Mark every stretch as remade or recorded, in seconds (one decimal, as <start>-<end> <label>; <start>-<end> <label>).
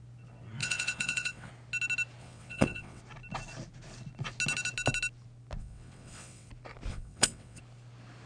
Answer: 0.0-0.6 recorded; 0.6-1.5 remade; 1.5-2.2 recorded; 2.2-3.0 remade; 3.0-5.6 recorded; 5.6-6.5 remade; 6.5-6.9 recorded; 6.9-7.6 remade; 7.6-8.3 recorded